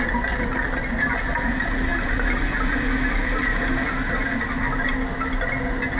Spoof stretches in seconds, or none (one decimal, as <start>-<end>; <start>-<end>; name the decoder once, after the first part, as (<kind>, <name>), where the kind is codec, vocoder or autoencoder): none